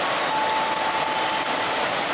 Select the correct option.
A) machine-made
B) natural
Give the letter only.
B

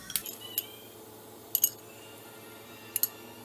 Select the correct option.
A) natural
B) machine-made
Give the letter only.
A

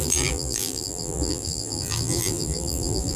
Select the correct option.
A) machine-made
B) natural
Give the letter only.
A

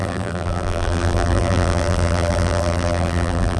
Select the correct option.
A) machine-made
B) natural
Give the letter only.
A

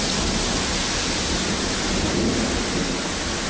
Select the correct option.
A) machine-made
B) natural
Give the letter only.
B